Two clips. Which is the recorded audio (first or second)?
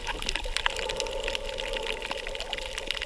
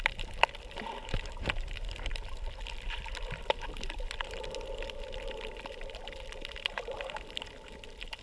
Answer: first